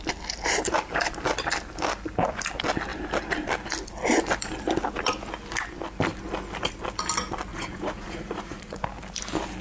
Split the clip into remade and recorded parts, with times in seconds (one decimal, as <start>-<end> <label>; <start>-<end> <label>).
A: 0.0-7.5 recorded; 7.5-8.8 remade; 8.8-9.6 recorded